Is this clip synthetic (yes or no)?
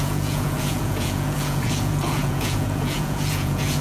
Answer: yes